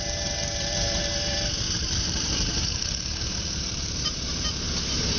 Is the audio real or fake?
fake